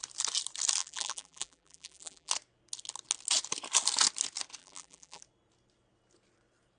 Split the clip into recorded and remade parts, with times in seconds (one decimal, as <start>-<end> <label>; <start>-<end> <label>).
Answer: 0.0-0.8 recorded; 0.8-2.3 remade; 2.3-4.6 recorded; 4.6-5.2 remade; 5.2-6.8 recorded